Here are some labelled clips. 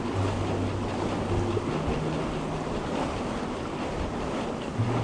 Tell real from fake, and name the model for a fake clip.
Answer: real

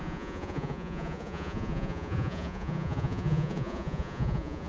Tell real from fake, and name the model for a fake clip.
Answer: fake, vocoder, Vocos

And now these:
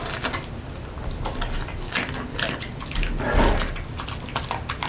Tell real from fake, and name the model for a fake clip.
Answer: real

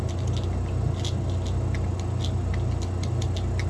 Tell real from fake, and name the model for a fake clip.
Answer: real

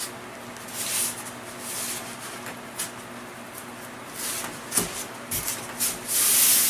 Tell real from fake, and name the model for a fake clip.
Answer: real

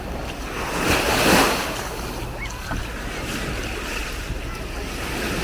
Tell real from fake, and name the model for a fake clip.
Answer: real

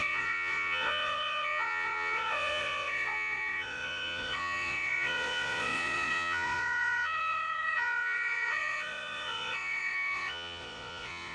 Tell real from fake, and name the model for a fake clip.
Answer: fake, vocoder, Vocos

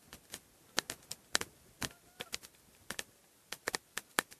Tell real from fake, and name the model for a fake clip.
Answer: real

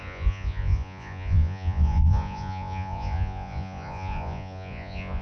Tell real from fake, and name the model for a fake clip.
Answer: fake, vocoder, Vocos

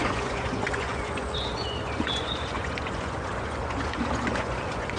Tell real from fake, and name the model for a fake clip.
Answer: fake, vocoder, Vocos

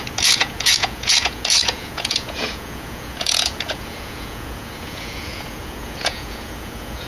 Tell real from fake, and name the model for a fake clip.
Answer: fake, vocoder, Vocos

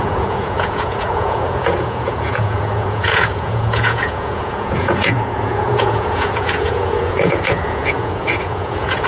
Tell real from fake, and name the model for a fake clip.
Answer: fake, vocoder, Vocos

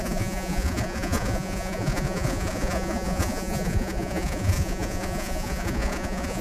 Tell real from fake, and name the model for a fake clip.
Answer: fake, vocoder, Vocos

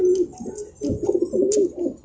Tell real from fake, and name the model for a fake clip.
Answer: real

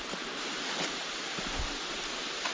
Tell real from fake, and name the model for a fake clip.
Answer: real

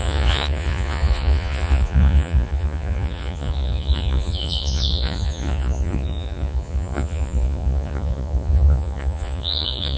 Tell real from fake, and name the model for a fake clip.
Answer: fake, vocoder, Vocos